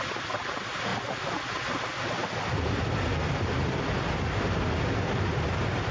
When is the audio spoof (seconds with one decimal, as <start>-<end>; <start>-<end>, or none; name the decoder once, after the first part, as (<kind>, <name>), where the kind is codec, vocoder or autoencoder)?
none